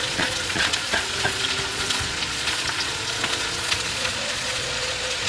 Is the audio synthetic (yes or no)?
yes